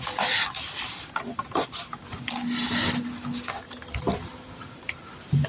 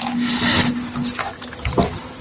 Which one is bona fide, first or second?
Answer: second